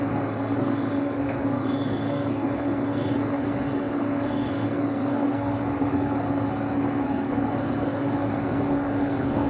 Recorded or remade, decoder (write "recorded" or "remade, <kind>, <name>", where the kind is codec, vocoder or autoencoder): remade, codec, SNAC